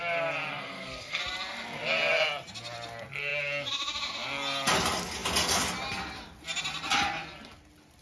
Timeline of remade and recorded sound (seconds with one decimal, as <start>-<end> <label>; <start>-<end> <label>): 0.0-0.5 recorded; 0.5-1.2 remade; 1.2-8.0 recorded